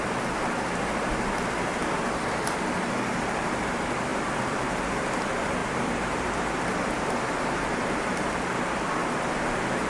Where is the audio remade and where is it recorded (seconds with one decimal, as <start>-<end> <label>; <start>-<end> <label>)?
0.0-1.8 recorded; 1.8-2.4 remade; 2.4-4.1 recorded; 4.1-4.8 remade; 4.8-5.6 recorded; 5.6-7.9 remade; 7.9-9.9 recorded